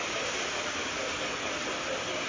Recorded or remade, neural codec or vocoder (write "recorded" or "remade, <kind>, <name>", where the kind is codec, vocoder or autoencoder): recorded